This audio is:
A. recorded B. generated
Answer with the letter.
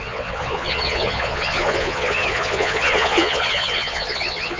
B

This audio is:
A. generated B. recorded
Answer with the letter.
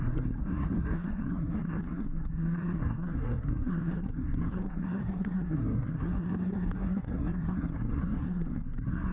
A